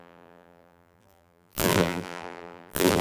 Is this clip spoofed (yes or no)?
yes